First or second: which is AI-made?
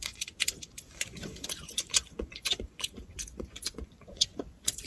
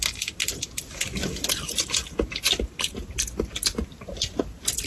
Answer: first